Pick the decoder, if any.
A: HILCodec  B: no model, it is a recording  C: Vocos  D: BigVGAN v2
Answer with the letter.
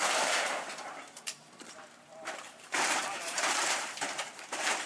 D